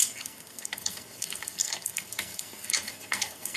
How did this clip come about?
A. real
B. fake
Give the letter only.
B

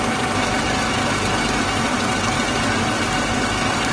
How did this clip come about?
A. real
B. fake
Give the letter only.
A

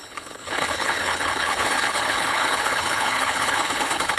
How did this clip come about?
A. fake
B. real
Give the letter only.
A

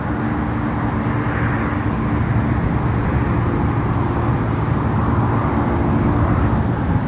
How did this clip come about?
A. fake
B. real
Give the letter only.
B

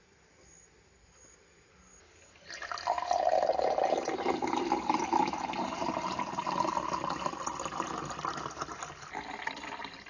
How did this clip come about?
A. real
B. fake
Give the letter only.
A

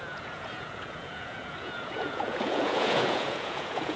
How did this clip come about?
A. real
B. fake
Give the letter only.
B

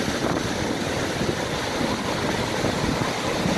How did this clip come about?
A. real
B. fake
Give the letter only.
A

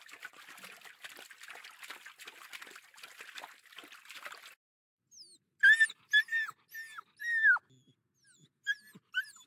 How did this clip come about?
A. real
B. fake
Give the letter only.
A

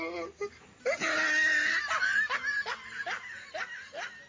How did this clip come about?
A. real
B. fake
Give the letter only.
A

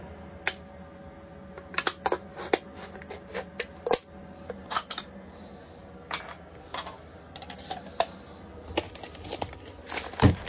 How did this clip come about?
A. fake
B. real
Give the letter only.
B